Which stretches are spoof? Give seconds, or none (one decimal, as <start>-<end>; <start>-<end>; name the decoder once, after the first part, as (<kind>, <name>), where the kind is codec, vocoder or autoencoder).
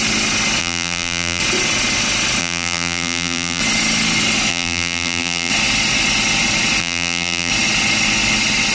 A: 0.6-1.4 (vocoder, BigVGAN v2); 2.4-3.6; 4.5-5.5; 6.8-7.5